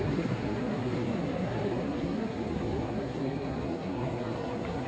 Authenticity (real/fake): fake